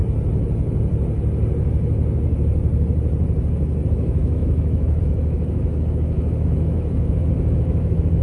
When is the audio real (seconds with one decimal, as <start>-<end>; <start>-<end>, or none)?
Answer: 0.0-3.9